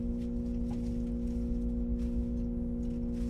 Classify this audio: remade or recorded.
recorded